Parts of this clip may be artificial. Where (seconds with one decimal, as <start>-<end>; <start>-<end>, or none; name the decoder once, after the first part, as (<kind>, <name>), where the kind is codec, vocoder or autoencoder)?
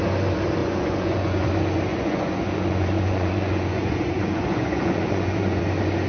0.6-1.5 (vocoder, Vocos); 1.9-5.6